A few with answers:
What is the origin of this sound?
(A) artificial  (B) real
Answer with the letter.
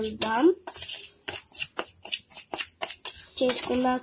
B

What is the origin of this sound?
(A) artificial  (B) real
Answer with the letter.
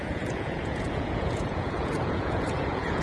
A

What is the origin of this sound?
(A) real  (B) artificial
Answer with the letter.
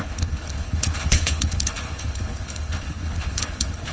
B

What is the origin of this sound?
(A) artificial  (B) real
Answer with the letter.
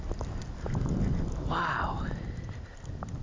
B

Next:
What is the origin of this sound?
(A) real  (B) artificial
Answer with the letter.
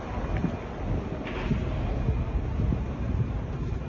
A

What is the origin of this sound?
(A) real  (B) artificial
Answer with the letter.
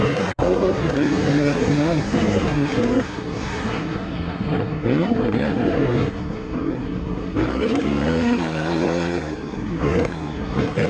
B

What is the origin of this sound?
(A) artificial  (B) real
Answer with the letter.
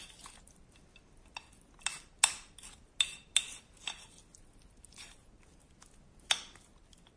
B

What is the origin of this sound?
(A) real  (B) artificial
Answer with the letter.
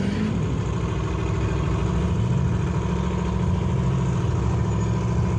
A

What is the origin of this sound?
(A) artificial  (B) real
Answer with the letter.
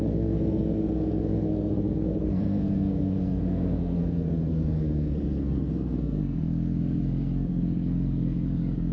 A